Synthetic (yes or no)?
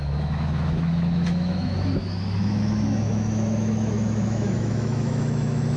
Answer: yes